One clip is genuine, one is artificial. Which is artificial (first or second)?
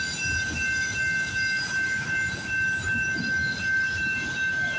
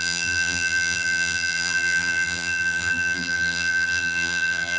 second